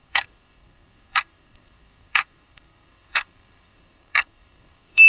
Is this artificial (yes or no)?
yes